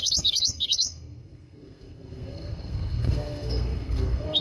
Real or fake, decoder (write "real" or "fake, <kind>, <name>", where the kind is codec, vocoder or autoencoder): fake, codec, SNAC